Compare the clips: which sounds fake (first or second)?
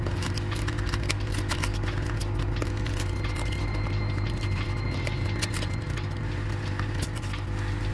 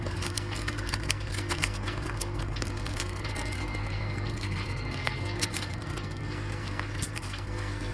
second